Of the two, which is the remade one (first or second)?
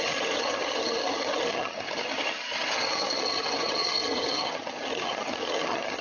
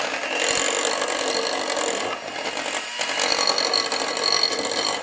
first